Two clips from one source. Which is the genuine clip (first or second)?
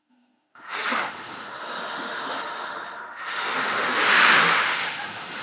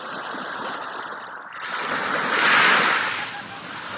second